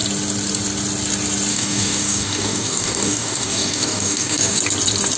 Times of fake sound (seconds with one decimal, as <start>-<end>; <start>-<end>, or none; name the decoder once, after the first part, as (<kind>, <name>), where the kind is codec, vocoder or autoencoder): 1.5-4.6 (codec, DAC)